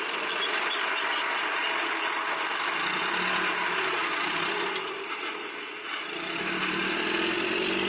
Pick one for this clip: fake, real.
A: real